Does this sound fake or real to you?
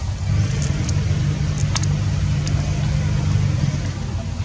real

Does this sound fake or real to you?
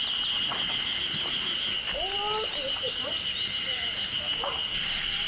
real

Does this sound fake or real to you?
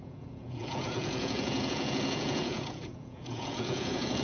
fake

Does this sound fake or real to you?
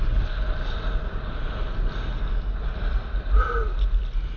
real